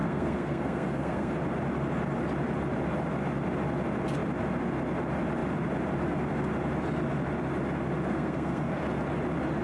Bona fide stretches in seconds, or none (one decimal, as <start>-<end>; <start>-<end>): 1.3-8.1; 8.8-9.6